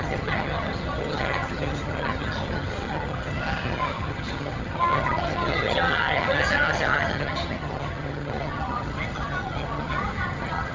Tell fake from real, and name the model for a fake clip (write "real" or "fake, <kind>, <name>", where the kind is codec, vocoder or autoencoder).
fake, vocoder, HiFi-GAN